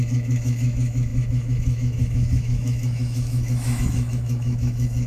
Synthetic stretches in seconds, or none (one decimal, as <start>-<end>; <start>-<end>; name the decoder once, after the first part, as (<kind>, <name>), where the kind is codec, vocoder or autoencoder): 0.0-5.1 (autoencoder, DAC-VAE)

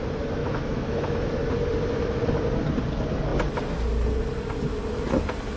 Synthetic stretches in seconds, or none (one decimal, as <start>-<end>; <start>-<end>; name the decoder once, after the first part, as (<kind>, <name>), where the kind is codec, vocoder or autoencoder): 0.4-1.3 (autoencoder, DAC-VAE)

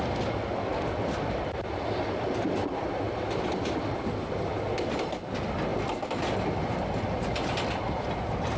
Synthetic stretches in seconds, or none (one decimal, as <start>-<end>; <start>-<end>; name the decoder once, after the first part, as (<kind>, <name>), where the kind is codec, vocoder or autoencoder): none

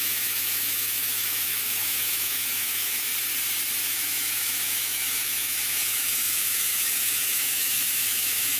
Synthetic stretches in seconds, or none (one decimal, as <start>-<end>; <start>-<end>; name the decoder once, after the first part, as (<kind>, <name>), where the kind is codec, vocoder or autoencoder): 0.0-3.1 (autoencoder, DAC-VAE); 3.8-8.6

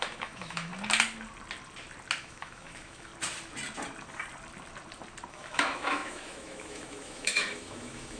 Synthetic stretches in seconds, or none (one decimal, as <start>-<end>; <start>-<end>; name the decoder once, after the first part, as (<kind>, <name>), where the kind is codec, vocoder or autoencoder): 0.0-0.7 (autoencoder, DAC-VAE); 2.2-3.1; 5.3-8.2

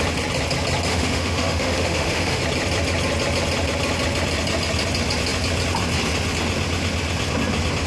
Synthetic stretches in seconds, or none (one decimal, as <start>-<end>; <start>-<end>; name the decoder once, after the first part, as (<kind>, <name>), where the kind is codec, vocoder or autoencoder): 0.9-2.4 (autoencoder, DAC-VAE)

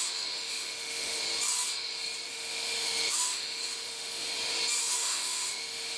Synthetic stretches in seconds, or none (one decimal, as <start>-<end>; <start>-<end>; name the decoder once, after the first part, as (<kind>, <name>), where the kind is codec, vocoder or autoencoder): 0.0-1.2 (autoencoder, DAC-VAE); 2.3-4.3; 4.8-6.0